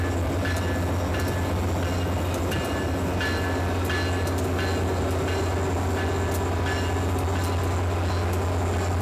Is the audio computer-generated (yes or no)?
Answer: no